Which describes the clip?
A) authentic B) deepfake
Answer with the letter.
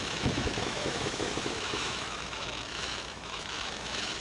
B